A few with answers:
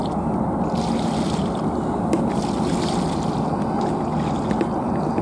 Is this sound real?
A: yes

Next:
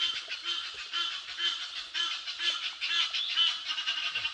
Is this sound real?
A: yes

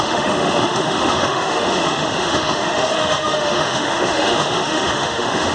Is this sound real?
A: no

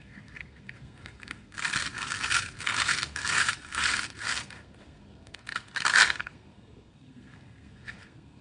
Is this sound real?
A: no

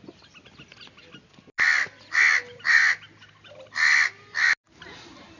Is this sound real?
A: yes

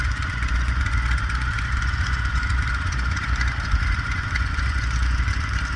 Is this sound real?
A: no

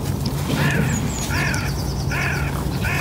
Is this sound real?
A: yes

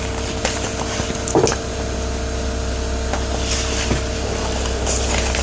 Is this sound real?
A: yes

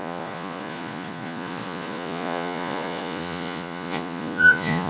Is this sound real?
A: no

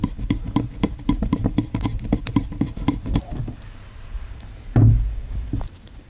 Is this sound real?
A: no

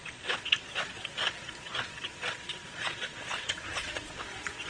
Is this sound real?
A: no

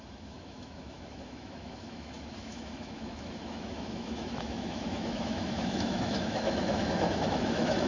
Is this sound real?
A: no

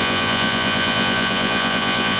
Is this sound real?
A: no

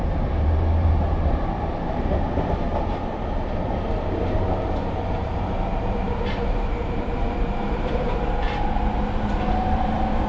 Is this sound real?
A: no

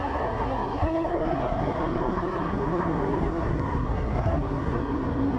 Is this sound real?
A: no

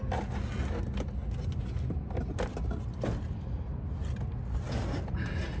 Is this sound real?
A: yes